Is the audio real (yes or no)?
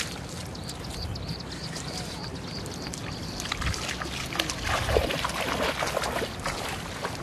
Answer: yes